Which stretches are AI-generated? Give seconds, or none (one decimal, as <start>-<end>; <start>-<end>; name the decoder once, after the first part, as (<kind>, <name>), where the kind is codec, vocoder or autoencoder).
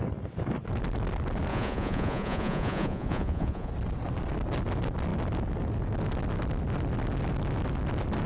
1.5-3.7 (vocoder, Vocos)